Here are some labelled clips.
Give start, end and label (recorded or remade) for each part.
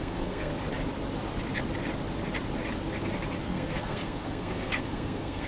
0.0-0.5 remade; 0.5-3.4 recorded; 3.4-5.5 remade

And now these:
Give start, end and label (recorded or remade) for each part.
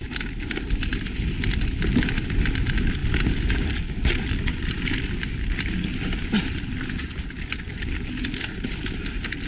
0.0-9.5 recorded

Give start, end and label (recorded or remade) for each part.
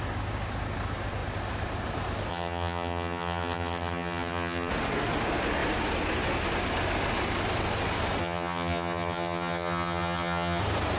0.0-2.3 recorded; 2.3-4.7 remade; 4.7-8.2 recorded; 8.2-10.6 remade; 10.6-11.0 recorded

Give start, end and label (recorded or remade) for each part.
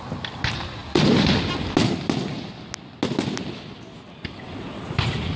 0.0-5.4 recorded